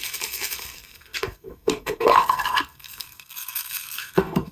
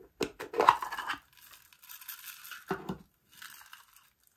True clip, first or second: second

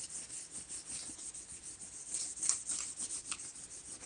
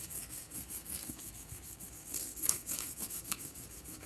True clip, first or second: first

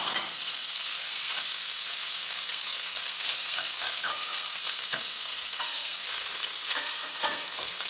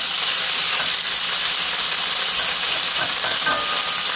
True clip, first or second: second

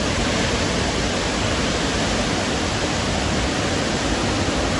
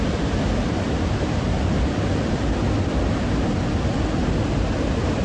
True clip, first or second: first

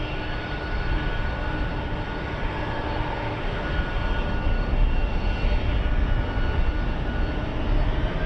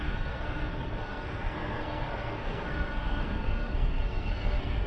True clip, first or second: first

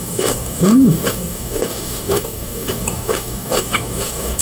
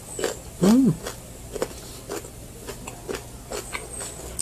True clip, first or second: second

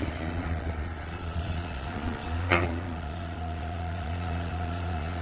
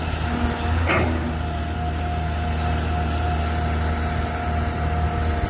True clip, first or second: second